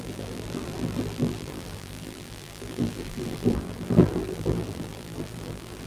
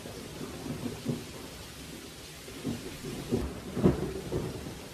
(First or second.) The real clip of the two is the second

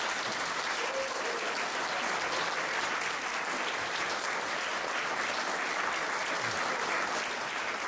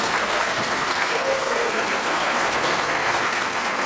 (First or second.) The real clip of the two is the first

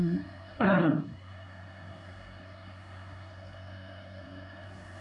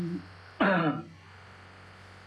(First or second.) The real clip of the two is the second